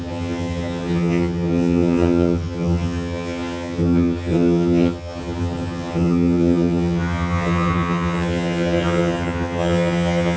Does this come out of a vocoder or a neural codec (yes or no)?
yes